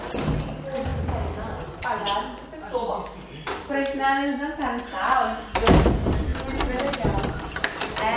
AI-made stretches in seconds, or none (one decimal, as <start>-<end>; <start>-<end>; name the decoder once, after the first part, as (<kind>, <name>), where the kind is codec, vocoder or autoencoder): 6.3-6.8 (vocoder, BigVGAN v2)